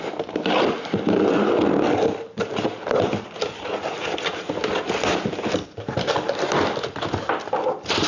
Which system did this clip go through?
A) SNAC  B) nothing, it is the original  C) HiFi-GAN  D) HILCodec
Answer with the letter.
B